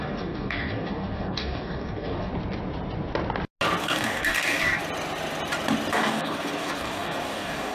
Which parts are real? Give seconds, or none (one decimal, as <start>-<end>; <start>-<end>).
2.3-3.8; 4.8-5.9